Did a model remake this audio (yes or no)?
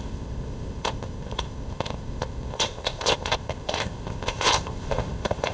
yes